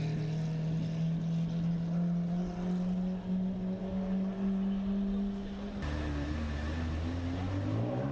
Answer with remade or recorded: recorded